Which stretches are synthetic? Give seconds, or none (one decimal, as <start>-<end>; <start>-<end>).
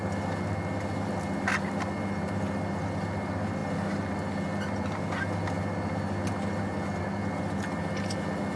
none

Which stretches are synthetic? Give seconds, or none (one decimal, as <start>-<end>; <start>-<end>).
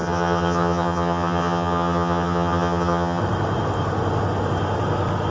0.0-3.2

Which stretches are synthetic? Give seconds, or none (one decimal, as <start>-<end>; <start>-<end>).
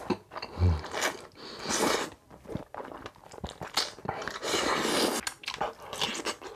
none